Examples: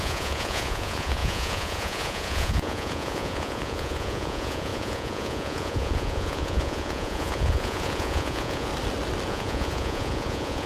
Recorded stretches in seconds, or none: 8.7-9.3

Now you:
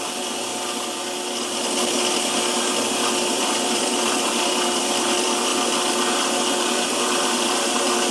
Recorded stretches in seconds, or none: 0.5-3.3; 5.5-6.5

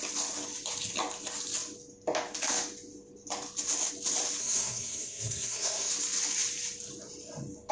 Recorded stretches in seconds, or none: 0.0-4.4; 5.9-7.7

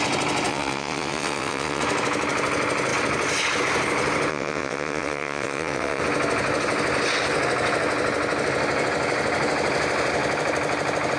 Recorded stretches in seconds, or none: 0.0-0.5; 1.8-4.3; 6.0-11.2

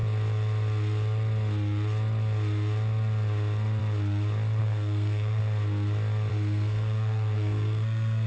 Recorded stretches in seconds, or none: 0.0-4.6; 5.4-6.3

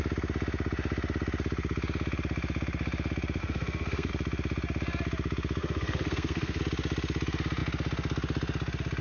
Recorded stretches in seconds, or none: 0.0-3.4; 4.1-5.6; 6.6-9.0

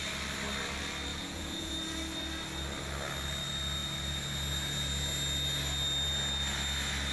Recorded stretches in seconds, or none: 0.0-1.1; 1.7-7.1